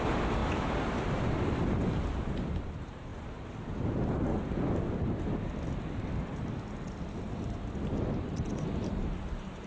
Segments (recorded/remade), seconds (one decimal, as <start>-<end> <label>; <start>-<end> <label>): 0.0-4.3 remade; 4.3-9.0 recorded; 9.0-9.7 remade